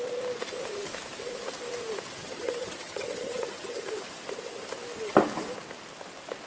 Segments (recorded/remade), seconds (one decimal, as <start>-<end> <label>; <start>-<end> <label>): 0.0-2.2 recorded; 2.2-3.9 remade; 3.9-6.5 recorded